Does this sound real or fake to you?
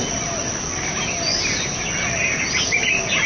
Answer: real